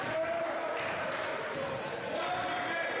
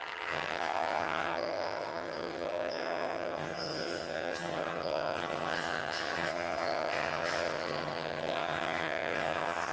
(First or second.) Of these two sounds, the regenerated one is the second